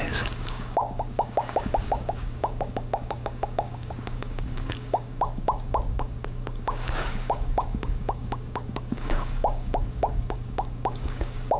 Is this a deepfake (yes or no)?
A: yes